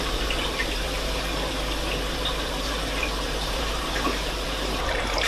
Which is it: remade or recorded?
remade